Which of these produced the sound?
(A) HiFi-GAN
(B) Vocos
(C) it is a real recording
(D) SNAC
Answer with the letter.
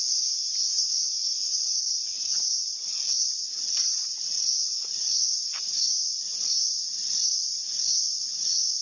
C